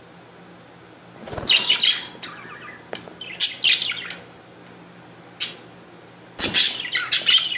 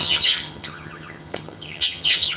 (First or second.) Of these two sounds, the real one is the first